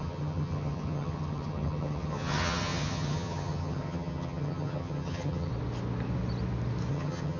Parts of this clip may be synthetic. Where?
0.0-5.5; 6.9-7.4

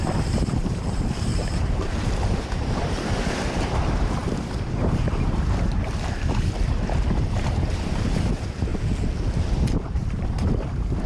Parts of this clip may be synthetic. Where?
0.0-8.7; 9.8-11.1

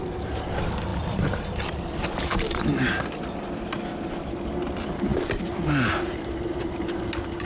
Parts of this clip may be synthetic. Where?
0.9-2.7

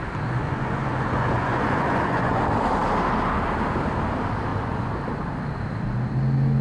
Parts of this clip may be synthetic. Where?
0.4-2.4; 4.5-5.0